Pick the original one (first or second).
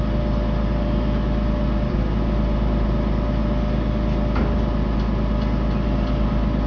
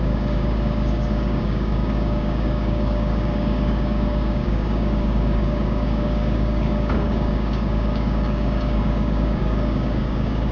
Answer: first